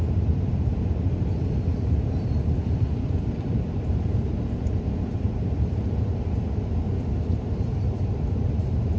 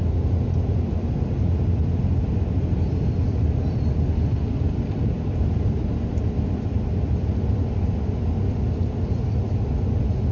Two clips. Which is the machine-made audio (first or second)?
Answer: first